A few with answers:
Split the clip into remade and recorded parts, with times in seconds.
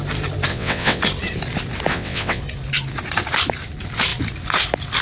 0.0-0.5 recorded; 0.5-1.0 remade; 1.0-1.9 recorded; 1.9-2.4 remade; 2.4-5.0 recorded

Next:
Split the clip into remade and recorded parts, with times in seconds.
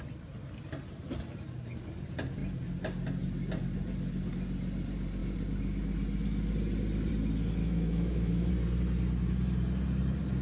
0.0-7.6 recorded; 7.6-8.5 remade; 8.5-10.4 recorded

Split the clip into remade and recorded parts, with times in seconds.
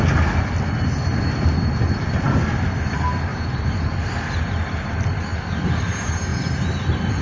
0.0-7.2 recorded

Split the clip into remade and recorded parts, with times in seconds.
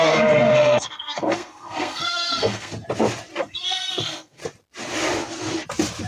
0.0-2.7 remade; 2.7-3.4 recorded; 3.4-4.4 remade; 4.4-6.1 recorded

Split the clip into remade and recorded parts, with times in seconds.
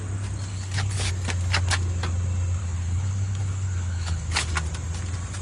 0.0-0.5 recorded; 0.5-1.1 remade; 1.1-2.6 recorded; 2.6-4.5 remade; 4.5-5.4 recorded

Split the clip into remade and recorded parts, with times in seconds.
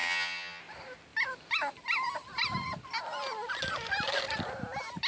0.0-0.6 remade; 0.6-5.1 recorded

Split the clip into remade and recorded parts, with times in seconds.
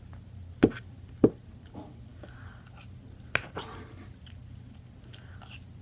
0.0-5.8 recorded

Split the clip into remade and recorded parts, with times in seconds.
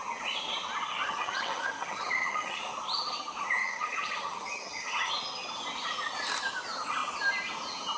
0.0-0.9 recorded; 0.9-2.6 remade; 2.6-3.6 recorded; 3.6-5.1 remade; 5.1-8.0 recorded